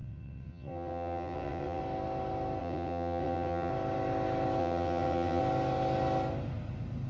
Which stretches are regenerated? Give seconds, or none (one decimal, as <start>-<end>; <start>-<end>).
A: 0.0-1.8; 2.6-3.7; 4.6-5.4